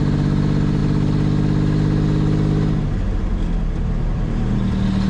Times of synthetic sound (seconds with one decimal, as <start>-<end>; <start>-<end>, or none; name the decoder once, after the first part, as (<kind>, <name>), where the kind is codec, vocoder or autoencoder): none